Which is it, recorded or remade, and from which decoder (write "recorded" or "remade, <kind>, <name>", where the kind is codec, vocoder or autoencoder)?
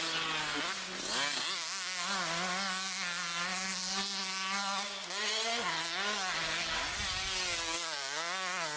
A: recorded